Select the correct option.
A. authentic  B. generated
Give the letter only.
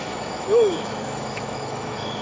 B